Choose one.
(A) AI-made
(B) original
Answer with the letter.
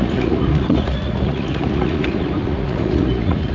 A